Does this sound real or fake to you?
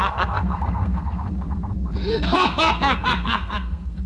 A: fake